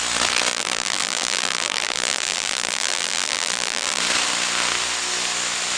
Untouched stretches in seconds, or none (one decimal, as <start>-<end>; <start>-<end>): 0.0-0.5; 4.0-5.8